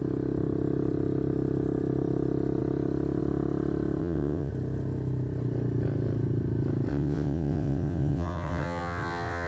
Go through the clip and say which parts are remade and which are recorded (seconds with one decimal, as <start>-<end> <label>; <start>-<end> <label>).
0.0-4.0 recorded; 4.0-4.5 remade; 4.5-6.9 recorded; 6.9-9.5 remade